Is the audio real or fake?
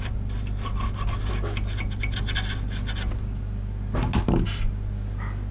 real